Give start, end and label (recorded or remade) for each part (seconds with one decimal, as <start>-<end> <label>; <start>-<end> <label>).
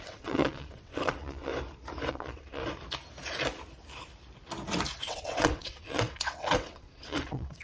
0.0-1.5 remade; 1.5-2.1 recorded; 2.1-2.6 remade; 2.6-5.0 recorded; 5.0-7.6 remade